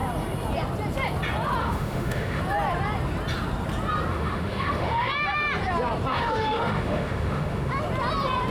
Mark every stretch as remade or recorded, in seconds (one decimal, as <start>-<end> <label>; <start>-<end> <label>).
0.0-1.6 recorded; 1.6-2.4 remade; 2.4-4.1 recorded; 4.1-5.1 remade; 5.1-6.1 recorded; 6.1-7.7 remade; 7.7-8.5 recorded